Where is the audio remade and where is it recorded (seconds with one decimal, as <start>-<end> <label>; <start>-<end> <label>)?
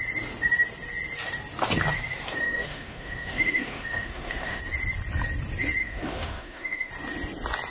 0.0-2.4 recorded; 2.4-4.6 remade; 4.6-5.8 recorded; 5.8-6.9 remade; 6.9-7.7 recorded